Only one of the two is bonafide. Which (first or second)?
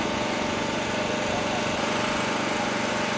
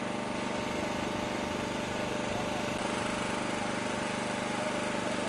second